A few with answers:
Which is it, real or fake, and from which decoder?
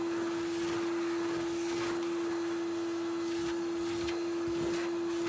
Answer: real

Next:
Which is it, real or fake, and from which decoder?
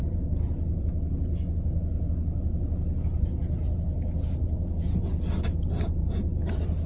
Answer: real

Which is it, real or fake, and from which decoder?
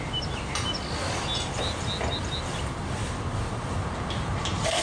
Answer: real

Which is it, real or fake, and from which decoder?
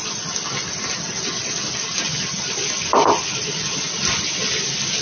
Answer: real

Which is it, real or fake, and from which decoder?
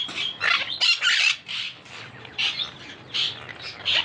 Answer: real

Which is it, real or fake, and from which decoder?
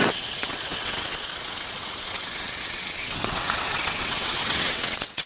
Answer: fake, vocoder, WaveNeXt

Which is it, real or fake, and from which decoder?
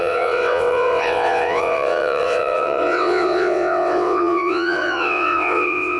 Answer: fake, vocoder, WaveNeXt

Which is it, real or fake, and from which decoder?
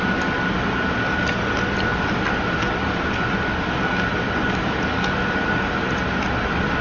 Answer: real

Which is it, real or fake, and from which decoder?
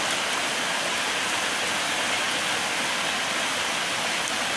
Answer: real